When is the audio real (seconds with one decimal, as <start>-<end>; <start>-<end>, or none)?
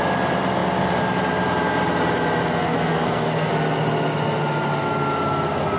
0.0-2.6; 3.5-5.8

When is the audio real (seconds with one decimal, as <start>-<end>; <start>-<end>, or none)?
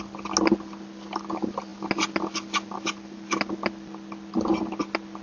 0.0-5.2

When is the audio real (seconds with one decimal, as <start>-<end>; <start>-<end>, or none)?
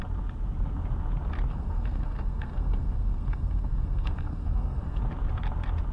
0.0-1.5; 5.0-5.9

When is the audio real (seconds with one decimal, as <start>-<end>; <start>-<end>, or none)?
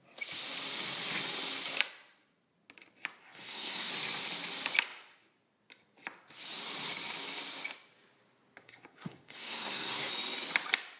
0.0-3.2; 3.9-8.6; 10.1-11.0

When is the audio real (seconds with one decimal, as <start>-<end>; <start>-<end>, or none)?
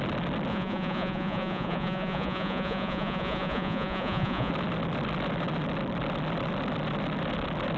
0.0-0.5; 4.5-7.8